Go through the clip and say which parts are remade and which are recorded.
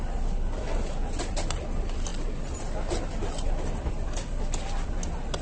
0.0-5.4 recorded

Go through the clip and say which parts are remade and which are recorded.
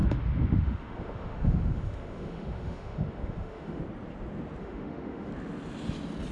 0.0-3.8 remade; 3.8-4.6 recorded; 4.6-5.3 remade; 5.3-6.3 recorded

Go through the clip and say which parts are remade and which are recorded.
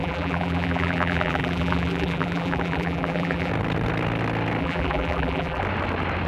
0.0-3.5 remade; 3.5-4.6 recorded; 4.6-5.6 remade; 5.6-6.3 recorded